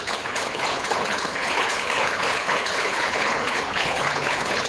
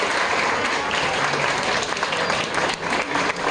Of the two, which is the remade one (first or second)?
first